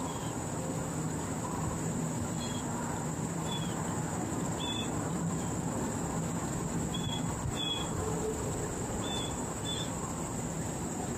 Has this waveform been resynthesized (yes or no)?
no